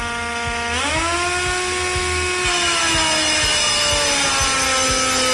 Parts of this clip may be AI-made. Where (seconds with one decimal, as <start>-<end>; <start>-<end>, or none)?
none